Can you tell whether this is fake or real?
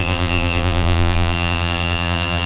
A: fake